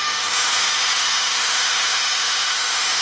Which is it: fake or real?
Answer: fake